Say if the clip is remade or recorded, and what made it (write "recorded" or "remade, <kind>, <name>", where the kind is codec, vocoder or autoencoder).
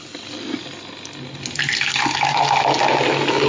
recorded